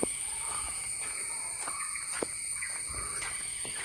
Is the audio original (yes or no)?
no